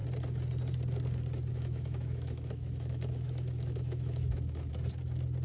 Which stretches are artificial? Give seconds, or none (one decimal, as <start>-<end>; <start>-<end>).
1.5-4.7